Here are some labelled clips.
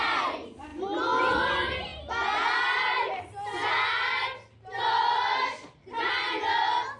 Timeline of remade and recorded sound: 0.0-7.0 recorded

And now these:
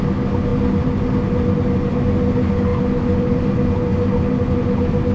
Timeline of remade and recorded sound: 0.0-5.1 recorded

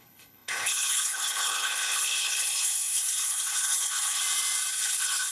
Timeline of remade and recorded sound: 0.0-4.2 remade; 4.2-4.7 recorded; 4.7-5.3 remade

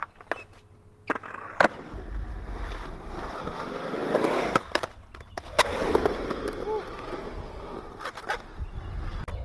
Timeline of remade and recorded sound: 0.0-9.4 recorded

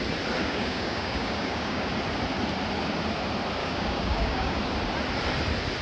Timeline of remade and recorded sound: 0.0-0.4 recorded; 0.4-1.9 remade; 1.9-3.6 recorded; 3.6-4.6 remade; 4.6-5.8 recorded